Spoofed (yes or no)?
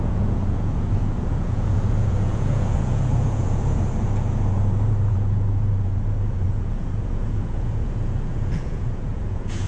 yes